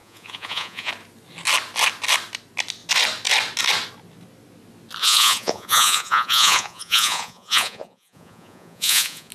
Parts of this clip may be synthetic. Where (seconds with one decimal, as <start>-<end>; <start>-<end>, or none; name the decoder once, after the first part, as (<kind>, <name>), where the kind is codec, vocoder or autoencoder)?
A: 0.0-0.9 (vocoder, Vocos); 5.0-9.3